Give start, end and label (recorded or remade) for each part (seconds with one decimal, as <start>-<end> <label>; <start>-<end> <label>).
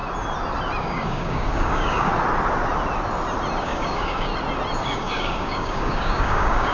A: 0.0-0.8 recorded; 0.8-2.1 remade; 2.1-3.6 recorded; 3.6-4.3 remade; 4.3-4.8 recorded; 4.8-6.7 remade